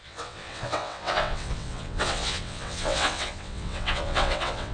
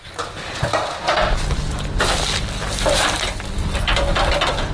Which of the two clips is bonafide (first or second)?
second